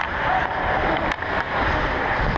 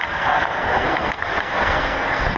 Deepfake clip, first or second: second